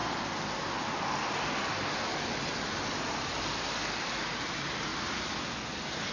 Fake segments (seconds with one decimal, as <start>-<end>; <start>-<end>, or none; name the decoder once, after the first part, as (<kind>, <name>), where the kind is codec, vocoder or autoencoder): none